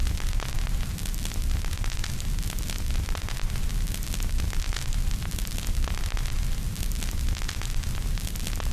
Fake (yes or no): no